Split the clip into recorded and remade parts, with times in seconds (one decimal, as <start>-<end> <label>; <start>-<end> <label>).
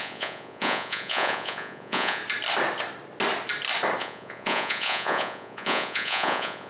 0.0-2.2 remade; 2.2-4.0 recorded; 4.0-6.7 remade